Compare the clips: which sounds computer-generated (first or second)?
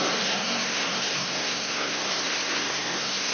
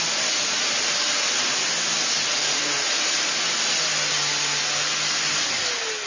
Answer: first